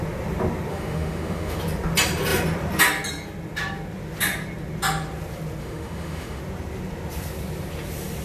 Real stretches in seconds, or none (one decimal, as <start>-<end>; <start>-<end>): 0.0-0.7; 1.6-5.6; 6.4-8.2